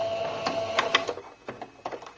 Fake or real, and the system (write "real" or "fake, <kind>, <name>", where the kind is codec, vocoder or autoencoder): real